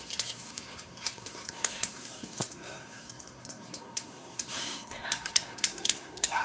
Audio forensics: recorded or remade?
remade